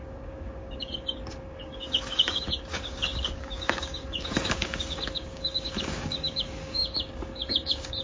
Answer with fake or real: fake